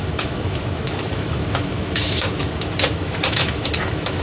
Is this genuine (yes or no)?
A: no